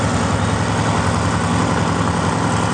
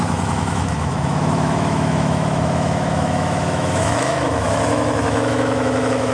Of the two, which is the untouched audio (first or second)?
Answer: first